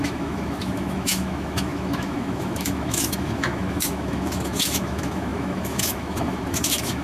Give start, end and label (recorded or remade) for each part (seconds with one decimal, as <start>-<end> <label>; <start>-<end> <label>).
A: 0.0-7.0 remade